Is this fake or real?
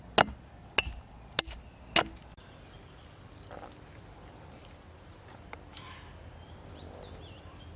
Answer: real